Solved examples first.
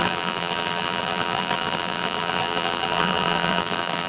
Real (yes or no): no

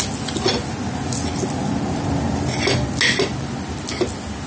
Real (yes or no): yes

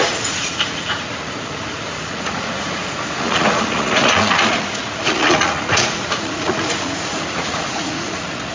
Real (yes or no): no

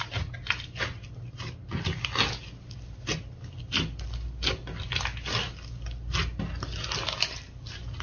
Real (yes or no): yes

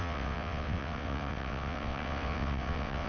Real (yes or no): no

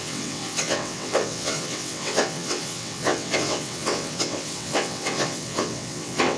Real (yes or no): no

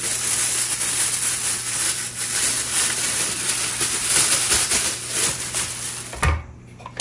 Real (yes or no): yes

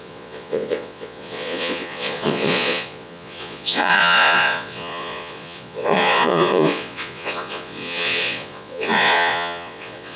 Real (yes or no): no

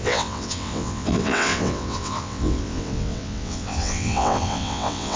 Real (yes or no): no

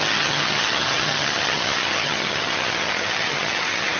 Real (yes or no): no